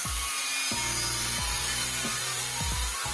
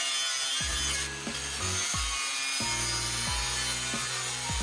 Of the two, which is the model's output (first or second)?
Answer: first